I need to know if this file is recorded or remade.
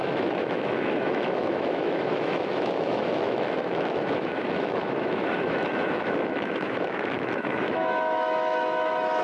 remade